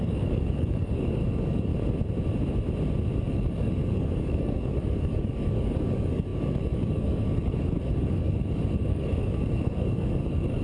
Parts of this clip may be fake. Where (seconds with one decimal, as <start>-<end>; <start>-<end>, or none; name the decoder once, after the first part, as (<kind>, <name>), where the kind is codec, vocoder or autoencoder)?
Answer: 0.0-1.7 (codec, DAC); 3.2-10.6